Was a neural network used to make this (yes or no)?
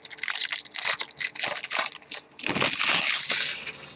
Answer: no